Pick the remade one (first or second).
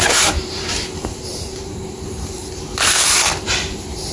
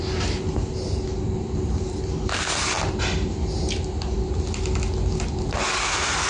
first